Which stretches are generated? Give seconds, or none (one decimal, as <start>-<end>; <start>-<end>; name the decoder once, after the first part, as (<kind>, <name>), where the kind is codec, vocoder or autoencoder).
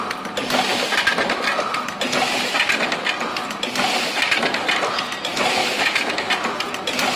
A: 5.6-6.3 (autoencoder, DAC-VAE)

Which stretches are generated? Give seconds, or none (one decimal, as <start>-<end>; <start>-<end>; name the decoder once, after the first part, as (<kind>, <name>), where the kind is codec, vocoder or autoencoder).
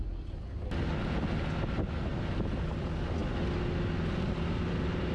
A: none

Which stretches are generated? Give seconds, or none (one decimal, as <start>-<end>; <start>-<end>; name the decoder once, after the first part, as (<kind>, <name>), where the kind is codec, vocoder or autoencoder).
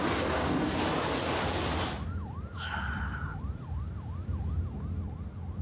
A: 3.3-4.5 (vocoder, BigVGAN v2)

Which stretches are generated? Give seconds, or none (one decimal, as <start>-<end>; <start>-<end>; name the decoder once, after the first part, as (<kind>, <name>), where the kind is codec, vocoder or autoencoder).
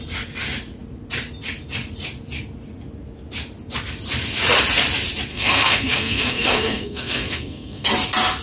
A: 5.3-7.9 (codec, SNAC)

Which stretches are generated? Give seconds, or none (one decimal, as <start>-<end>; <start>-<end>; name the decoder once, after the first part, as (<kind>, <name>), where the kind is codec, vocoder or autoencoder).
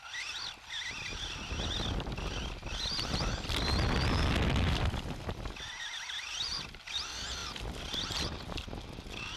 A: none